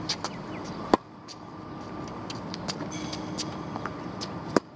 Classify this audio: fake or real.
real